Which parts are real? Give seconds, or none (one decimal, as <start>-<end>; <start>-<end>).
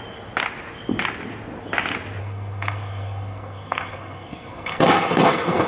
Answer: 0.0-2.2